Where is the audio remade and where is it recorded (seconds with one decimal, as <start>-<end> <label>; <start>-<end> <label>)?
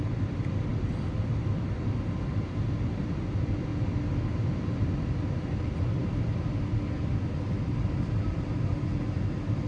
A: 0.0-0.7 remade; 0.7-1.6 recorded; 1.6-3.7 remade; 3.7-5.1 recorded; 5.1-8.9 remade; 8.9-9.7 recorded